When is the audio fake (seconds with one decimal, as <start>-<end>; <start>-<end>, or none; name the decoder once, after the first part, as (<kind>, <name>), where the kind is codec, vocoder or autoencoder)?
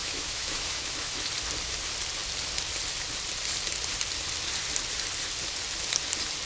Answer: 0.0-1.3 (autoencoder, DAC-VAE)